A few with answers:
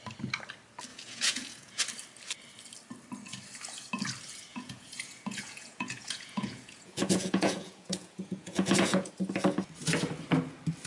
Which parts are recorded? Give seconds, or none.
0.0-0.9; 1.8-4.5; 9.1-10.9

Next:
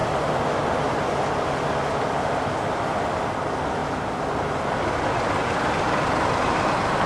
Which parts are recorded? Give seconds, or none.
0.0-7.1